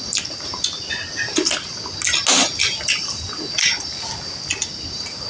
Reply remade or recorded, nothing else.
recorded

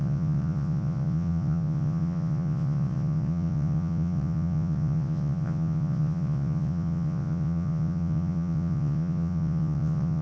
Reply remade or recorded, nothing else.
remade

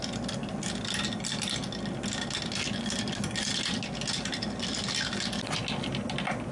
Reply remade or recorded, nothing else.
recorded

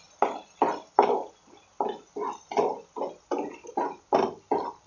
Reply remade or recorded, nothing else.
recorded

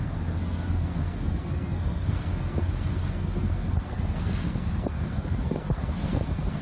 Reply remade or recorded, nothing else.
remade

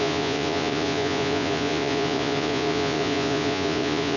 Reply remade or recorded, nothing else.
remade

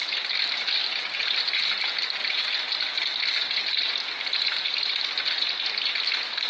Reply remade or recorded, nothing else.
recorded